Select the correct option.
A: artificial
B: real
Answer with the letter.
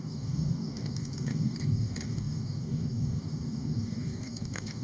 A